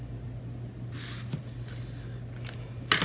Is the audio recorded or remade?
recorded